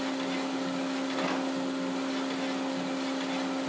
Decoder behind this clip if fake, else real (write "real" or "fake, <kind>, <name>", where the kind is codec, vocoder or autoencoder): real